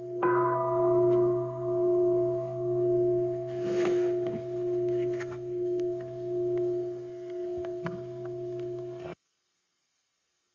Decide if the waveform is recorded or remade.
remade